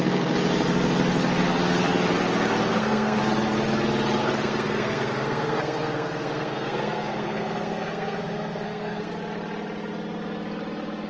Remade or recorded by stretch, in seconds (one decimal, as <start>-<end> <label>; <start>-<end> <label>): 0.0-2.7 recorded; 2.7-3.2 remade; 3.2-4.2 recorded; 4.2-9.1 remade; 9.1-11.1 recorded